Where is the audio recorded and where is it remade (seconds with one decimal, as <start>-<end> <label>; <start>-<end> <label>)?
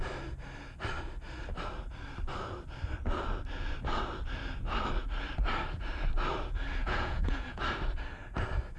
0.0-6.8 recorded; 6.8-7.6 remade; 7.6-8.8 recorded